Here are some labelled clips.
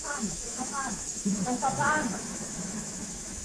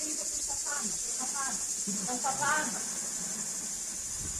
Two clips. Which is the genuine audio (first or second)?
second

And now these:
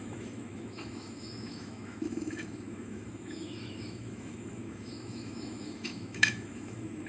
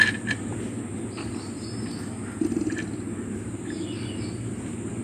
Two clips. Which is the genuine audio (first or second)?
second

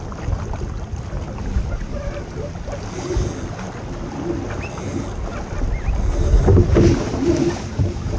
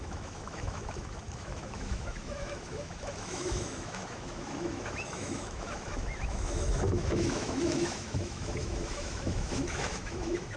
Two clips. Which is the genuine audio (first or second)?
first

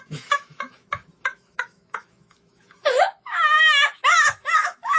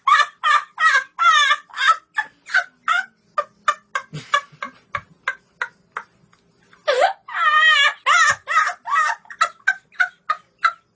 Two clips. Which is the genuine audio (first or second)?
second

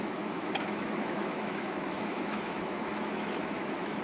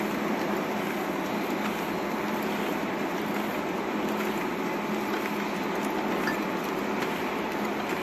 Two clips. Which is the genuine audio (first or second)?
second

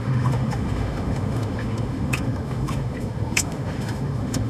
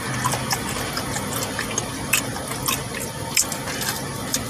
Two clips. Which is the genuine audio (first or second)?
second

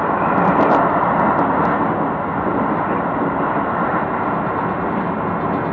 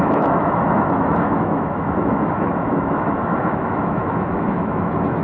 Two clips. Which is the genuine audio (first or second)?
first